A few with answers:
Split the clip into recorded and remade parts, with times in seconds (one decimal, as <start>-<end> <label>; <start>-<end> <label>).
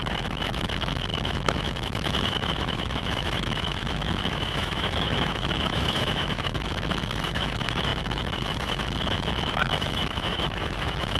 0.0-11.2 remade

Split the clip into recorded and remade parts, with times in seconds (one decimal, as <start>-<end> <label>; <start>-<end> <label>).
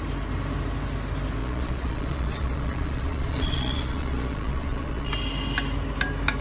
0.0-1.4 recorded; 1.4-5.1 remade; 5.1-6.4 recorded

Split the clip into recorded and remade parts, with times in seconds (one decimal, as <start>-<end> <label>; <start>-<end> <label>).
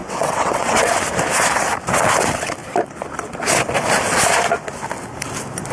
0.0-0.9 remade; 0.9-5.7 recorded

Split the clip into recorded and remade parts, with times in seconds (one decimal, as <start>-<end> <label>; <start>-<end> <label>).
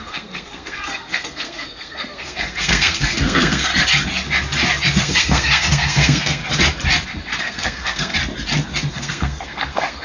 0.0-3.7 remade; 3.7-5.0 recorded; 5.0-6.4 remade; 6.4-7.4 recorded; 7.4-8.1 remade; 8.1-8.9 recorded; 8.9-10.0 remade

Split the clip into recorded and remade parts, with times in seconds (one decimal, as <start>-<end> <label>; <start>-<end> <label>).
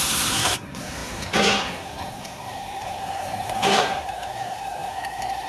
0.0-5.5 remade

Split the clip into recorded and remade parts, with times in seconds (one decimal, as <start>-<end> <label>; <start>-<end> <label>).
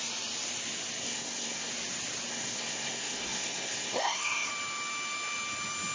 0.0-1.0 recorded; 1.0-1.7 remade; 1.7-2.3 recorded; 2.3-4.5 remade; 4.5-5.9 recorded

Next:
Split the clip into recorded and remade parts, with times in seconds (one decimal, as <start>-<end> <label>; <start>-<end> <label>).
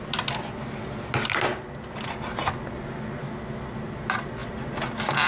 0.0-5.3 recorded